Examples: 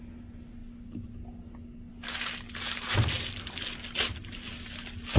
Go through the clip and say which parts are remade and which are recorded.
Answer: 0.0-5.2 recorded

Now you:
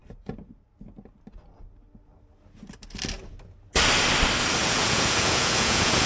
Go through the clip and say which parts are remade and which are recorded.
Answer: 0.0-4.6 recorded; 4.6-6.1 remade

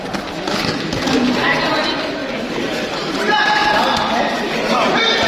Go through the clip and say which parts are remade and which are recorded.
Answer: 0.0-5.3 recorded

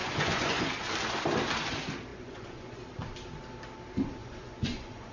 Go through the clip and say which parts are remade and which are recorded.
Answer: 0.0-0.7 remade; 0.7-2.1 recorded; 2.1-2.8 remade; 2.8-4.2 recorded; 4.2-5.1 remade